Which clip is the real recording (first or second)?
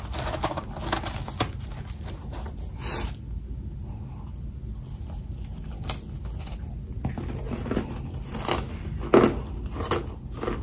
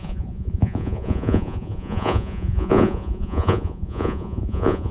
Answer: first